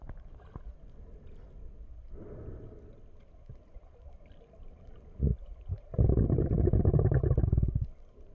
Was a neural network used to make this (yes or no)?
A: no